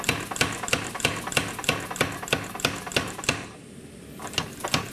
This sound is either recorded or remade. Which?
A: recorded